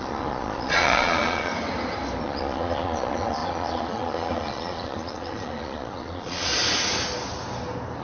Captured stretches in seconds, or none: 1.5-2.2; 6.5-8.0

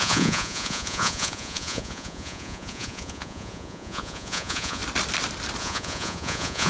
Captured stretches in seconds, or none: 4.8-5.6

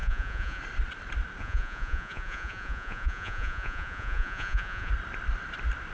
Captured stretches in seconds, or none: 0.6-1.4; 4.9-5.9

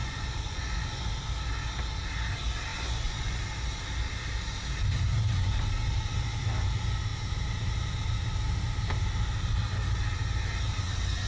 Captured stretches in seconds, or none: 1.1-2.7; 3.4-11.3

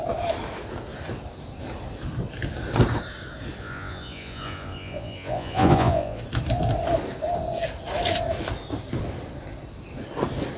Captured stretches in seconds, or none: 0.0-3.6; 6.2-10.6